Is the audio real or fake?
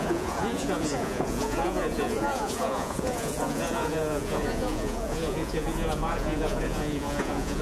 fake